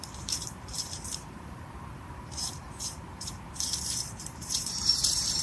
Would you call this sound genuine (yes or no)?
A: no